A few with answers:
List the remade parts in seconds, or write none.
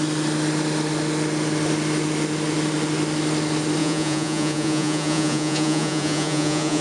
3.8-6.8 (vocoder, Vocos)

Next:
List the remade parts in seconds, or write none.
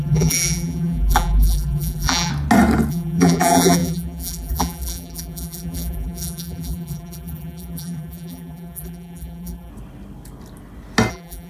0.0-2.3 (vocoder, BigVGAN v2); 2.9-9.7; 11.1-11.5